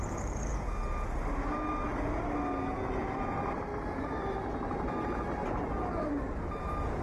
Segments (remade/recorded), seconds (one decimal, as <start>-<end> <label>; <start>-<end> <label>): 0.0-0.5 remade; 0.5-2.9 recorded; 2.9-3.7 remade; 3.7-6.0 recorded; 6.0-7.0 remade